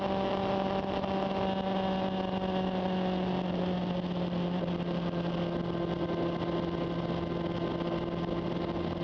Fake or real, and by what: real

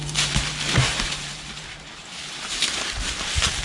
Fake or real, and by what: fake, vocoder, BigVGAN v2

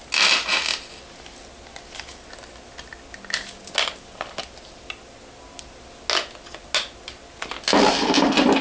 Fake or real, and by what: real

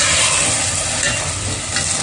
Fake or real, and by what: real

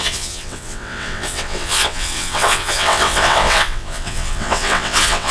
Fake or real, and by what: fake, vocoder, WaveNeXt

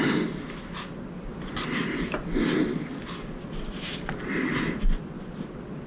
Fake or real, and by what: real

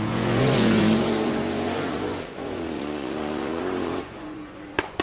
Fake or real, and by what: fake, vocoder, Vocos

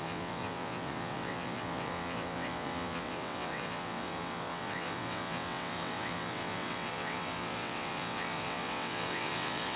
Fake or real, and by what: fake, vocoder, WaveNeXt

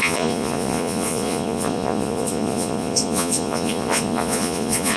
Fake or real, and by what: fake, vocoder, Vocos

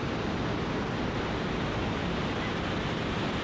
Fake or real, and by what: real